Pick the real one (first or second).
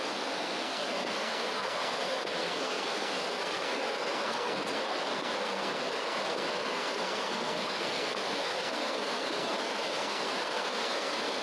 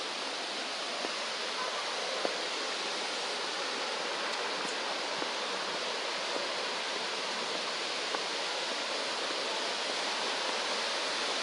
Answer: second